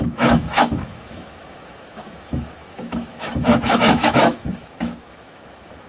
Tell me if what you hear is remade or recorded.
remade